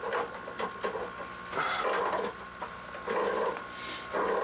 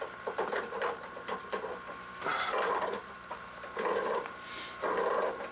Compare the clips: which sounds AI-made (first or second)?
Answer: second